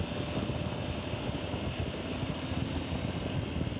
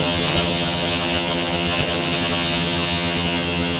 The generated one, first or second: second